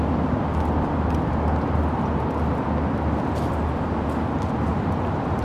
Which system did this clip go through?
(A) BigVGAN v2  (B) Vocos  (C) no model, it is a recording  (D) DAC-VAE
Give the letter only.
C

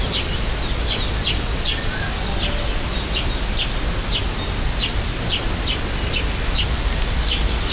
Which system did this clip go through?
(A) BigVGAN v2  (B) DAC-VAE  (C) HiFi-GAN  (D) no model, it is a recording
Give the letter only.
D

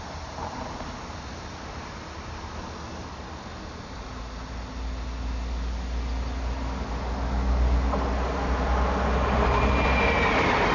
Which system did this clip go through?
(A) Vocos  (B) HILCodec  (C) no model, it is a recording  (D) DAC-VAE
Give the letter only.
C